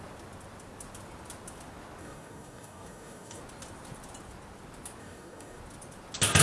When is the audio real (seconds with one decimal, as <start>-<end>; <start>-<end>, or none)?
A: 0.0-2.0; 3.4-5.0; 5.6-6.4